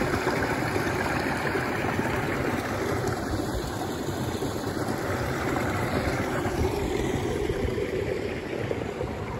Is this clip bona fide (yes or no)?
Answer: no